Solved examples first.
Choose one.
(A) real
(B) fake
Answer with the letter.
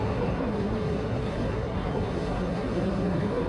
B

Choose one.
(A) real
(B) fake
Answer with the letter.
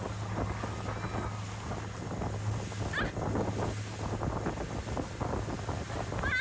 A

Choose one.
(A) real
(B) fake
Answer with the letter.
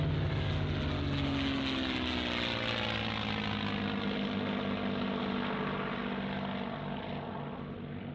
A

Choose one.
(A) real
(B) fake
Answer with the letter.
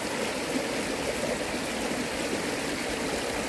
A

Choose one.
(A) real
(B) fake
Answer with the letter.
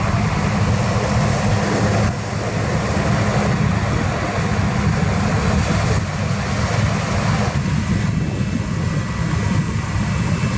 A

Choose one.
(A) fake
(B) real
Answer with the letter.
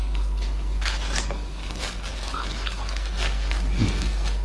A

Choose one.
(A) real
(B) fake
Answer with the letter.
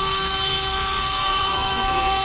B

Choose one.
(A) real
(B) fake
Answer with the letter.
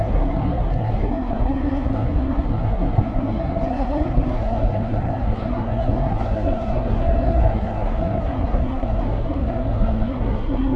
B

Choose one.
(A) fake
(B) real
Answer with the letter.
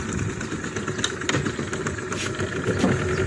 B